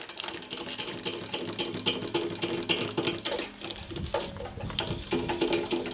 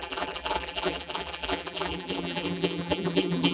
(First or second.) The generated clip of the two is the second